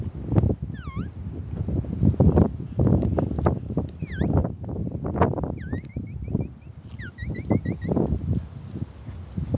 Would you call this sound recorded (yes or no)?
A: yes